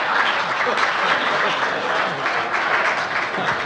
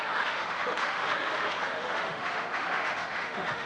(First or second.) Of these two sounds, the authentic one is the first